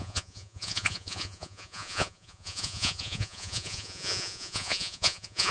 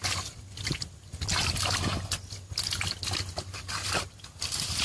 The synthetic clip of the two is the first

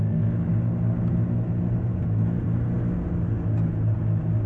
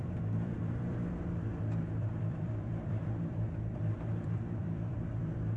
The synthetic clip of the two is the second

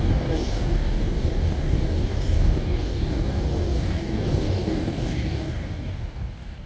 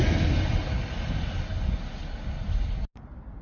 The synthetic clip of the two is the first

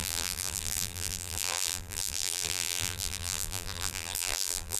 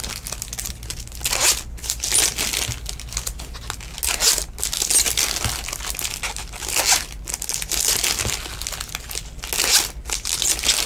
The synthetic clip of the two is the first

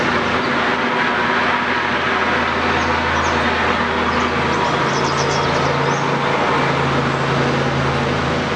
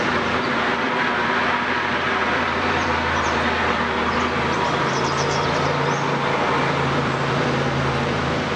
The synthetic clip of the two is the second